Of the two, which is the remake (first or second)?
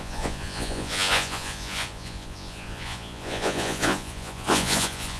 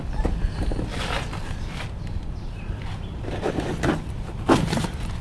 first